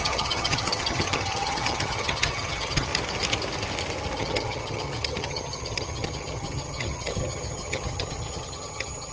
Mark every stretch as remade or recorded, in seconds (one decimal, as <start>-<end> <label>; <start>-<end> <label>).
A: 0.0-2.9 remade; 2.9-4.2 recorded; 4.2-9.1 remade